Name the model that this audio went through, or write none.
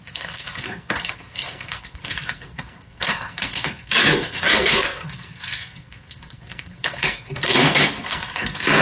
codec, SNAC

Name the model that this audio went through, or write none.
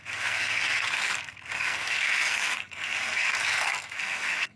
codec, SNAC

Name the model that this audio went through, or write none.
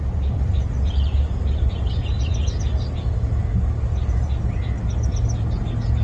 none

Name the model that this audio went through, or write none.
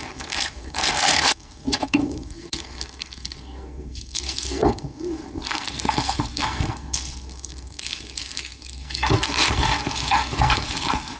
codec, SNAC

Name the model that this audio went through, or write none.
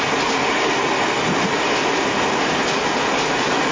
none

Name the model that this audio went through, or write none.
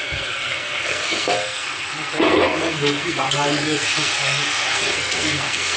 codec, SNAC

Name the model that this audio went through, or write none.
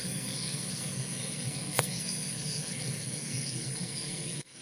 codec, SNAC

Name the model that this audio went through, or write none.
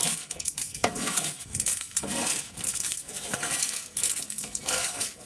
codec, SNAC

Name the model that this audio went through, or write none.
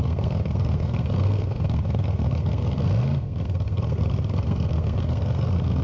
codec, SNAC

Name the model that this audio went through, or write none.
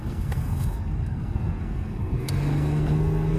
codec, SNAC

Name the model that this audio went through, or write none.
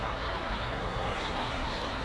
codec, SNAC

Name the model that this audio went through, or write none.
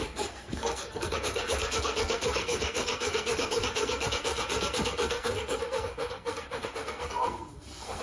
codec, SNAC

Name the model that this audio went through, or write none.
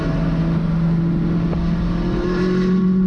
none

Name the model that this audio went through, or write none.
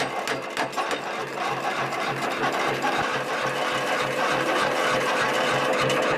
none